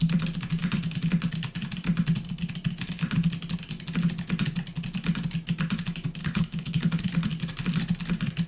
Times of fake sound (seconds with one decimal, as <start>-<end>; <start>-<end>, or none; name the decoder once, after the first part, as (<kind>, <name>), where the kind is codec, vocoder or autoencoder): 6.2-7.0 (codec, HILCodec)